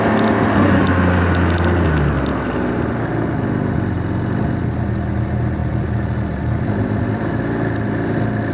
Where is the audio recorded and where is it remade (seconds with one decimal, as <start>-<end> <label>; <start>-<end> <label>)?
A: 0.0-5.6 recorded; 5.6-7.3 remade; 7.3-8.5 recorded